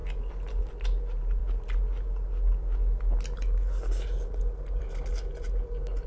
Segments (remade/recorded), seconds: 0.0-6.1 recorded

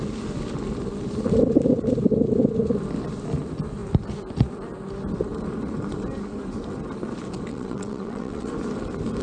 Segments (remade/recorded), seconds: 0.0-7.5 recorded; 7.5-8.5 remade; 8.5-9.2 recorded

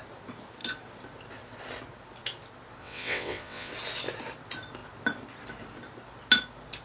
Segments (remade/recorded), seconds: 0.0-2.8 recorded; 2.8-3.7 remade; 3.7-6.8 recorded

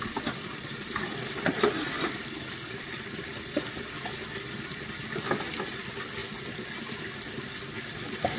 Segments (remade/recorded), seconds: 0.0-8.4 recorded

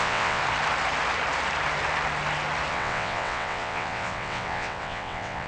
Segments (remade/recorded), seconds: 0.0-0.4 remade; 0.4-2.7 recorded; 2.7-5.5 remade

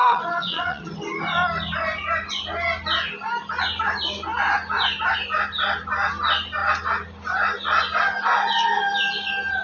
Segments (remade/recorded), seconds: 0.0-0.9 remade; 0.9-9.6 recorded